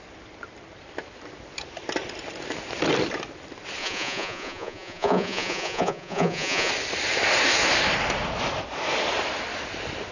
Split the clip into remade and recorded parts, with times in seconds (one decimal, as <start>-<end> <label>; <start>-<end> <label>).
0.0-3.8 recorded; 3.8-6.7 remade; 6.7-10.1 recorded